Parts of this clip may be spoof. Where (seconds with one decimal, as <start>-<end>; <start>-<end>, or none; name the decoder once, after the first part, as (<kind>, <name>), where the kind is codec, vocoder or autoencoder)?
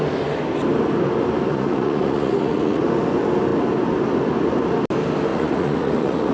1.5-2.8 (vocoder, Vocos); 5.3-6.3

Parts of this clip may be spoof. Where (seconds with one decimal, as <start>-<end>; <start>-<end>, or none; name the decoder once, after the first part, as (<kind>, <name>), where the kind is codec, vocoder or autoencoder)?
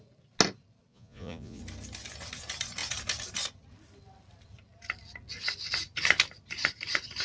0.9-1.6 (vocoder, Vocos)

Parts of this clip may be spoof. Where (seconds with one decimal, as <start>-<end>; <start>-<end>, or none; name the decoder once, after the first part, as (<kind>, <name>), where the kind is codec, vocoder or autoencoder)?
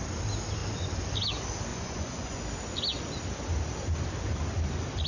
1.7-2.4 (vocoder, Vocos)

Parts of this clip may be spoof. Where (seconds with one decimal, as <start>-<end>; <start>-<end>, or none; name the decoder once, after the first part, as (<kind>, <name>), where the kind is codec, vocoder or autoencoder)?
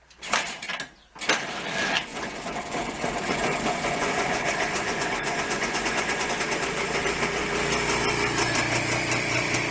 2.1-6.3 (vocoder, Vocos)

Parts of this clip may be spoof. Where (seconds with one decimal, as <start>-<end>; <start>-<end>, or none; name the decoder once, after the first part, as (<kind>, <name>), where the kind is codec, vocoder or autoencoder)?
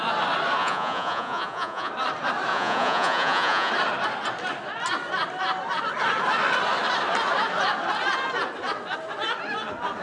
0.6-1.9 (vocoder, Vocos); 2.5-3.7